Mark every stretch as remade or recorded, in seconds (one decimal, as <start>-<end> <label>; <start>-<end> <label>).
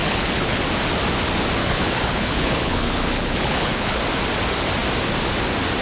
0.0-0.6 remade; 0.6-1.6 recorded; 1.6-4.0 remade; 4.0-5.8 recorded